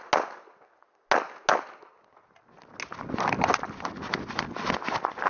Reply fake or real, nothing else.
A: real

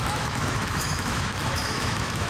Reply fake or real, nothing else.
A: fake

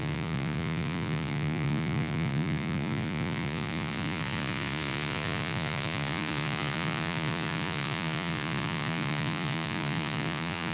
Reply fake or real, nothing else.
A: fake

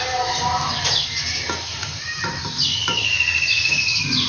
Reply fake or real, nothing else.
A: fake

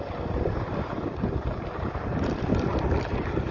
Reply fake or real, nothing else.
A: real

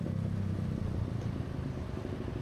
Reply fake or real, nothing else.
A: real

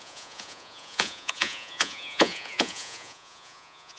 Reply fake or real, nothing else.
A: fake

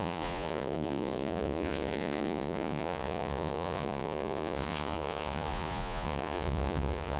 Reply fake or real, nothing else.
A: fake